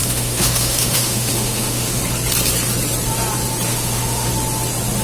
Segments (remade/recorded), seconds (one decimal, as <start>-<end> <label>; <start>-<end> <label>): 0.0-2.0 remade; 2.0-3.7 recorded; 3.7-4.3 remade; 4.3-5.0 recorded